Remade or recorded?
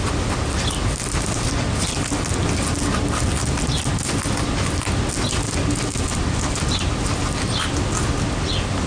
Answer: recorded